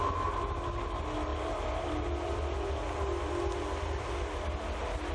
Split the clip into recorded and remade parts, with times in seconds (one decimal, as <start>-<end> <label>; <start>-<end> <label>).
0.0-5.1 recorded

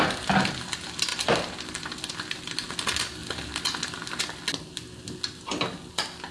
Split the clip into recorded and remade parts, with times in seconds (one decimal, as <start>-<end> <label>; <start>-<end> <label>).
0.0-6.3 recorded

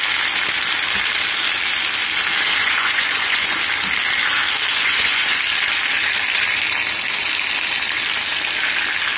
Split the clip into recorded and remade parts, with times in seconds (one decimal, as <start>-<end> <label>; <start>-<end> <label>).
0.0-2.6 recorded; 2.6-3.6 remade; 3.6-4.7 recorded; 4.7-5.4 remade; 5.4-9.2 recorded

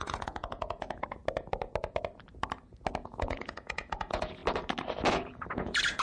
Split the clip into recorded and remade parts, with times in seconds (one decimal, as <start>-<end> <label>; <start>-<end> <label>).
0.0-1.2 remade; 1.2-3.0 recorded; 3.0-4.4 remade; 4.4-5.1 recorded; 5.1-6.0 remade

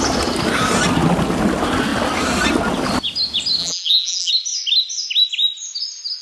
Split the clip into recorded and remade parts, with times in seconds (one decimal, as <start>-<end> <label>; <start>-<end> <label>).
0.0-3.6 recorded; 3.6-4.3 remade; 4.3-6.2 recorded

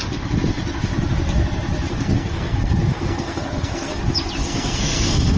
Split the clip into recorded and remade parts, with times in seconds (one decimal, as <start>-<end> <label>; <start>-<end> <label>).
0.0-1.9 recorded; 1.9-4.0 remade; 4.0-4.4 recorded; 4.4-5.4 remade